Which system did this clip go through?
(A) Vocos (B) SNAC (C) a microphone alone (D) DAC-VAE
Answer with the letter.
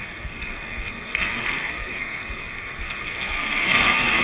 B